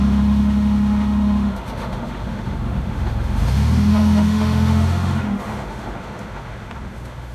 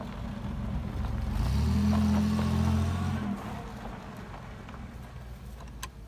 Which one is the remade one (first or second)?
first